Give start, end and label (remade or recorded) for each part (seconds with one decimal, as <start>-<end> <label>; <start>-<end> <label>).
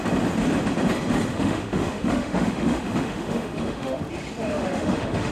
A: 0.0-1.3 recorded; 1.3-4.0 remade; 4.0-4.4 recorded; 4.4-5.3 remade